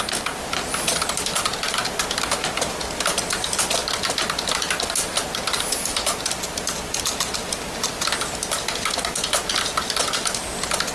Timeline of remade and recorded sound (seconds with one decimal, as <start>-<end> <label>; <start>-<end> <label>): 0.0-10.9 recorded